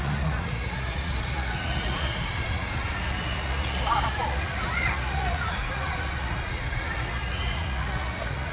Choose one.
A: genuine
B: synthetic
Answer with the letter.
B